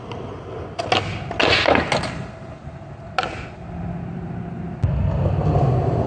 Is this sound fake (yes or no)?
no